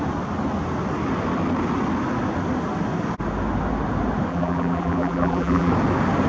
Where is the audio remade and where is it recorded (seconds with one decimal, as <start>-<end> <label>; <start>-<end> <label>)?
0.0-4.3 recorded; 4.3-5.7 remade; 5.7-6.3 recorded